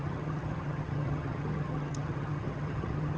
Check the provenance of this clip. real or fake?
fake